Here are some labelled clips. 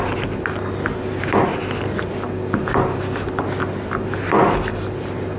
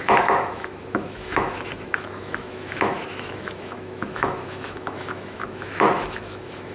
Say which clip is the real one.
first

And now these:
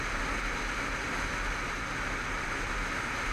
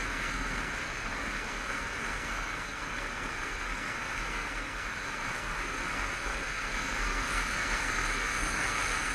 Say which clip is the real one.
first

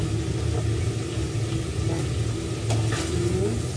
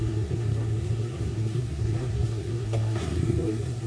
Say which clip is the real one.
first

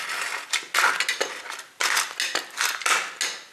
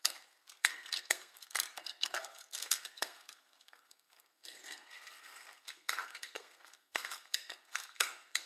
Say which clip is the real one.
first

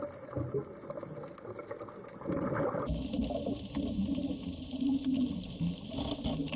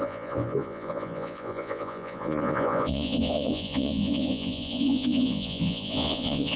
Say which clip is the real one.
first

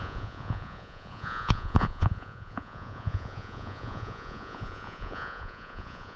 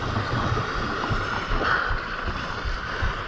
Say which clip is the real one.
second